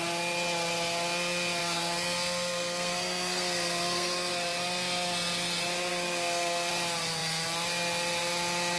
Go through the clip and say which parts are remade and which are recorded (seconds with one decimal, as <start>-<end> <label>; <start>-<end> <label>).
0.0-1.6 recorded; 1.6-4.3 remade; 4.3-5.9 recorded; 5.9-6.7 remade; 6.7-8.8 recorded